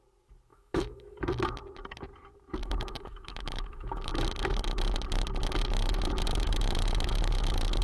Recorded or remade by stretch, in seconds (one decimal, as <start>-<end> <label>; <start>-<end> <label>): 0.0-0.5 recorded; 0.5-1.2 remade; 1.2-2.6 recorded; 2.6-4.1 remade; 4.1-7.8 recorded

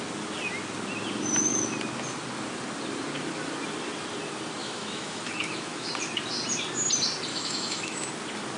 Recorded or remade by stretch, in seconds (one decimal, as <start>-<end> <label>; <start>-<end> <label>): 0.0-4.6 recorded; 4.6-5.9 remade; 5.9-7.3 recorded; 7.3-8.1 remade; 8.1-8.6 recorded

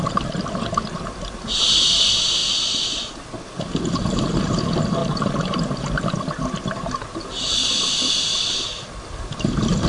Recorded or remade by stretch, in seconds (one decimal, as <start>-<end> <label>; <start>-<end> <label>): 0.0-9.9 recorded